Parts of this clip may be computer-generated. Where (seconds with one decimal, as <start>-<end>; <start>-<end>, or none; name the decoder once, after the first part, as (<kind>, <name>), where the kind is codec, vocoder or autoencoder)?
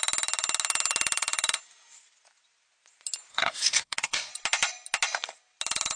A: 3.3-4.3 (codec, SNAC)